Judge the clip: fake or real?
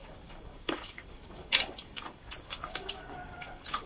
fake